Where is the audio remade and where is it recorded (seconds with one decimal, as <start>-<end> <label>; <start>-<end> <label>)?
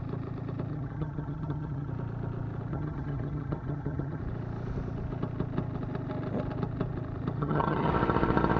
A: 0.0-0.7 recorded; 0.7-1.9 remade; 1.9-2.7 recorded; 2.7-4.2 remade; 4.2-7.4 recorded; 7.4-7.9 remade; 7.9-8.6 recorded